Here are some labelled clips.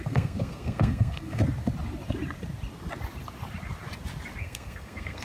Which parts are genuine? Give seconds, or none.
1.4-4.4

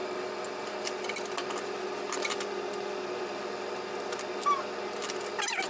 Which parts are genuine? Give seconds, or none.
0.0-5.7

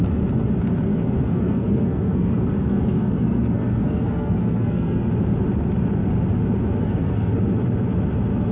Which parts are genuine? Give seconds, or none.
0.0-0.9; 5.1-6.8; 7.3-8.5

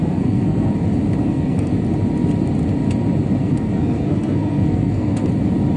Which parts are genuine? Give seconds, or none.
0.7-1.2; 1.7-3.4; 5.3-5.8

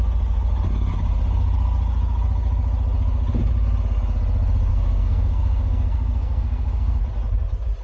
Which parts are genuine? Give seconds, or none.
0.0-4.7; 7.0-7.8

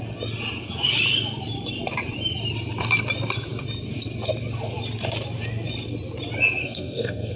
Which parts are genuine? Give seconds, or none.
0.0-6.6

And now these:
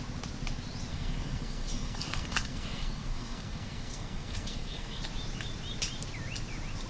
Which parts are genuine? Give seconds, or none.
0.0-0.9; 5.0-6.9